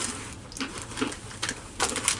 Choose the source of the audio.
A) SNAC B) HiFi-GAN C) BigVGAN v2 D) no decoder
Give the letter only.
D